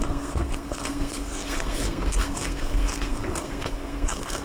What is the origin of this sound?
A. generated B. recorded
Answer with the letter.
A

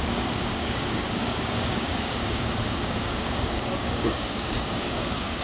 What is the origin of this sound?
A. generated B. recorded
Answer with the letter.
A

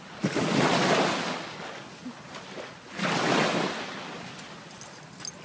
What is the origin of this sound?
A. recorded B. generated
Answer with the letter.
A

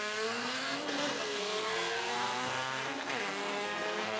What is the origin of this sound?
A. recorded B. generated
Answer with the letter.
B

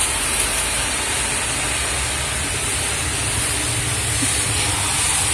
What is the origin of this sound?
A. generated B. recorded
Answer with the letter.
B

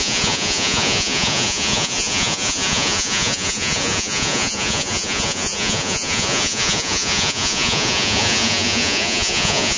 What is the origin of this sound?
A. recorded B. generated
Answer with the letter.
B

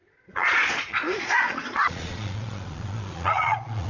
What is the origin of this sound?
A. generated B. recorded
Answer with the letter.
A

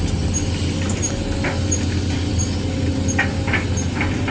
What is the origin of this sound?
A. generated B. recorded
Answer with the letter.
B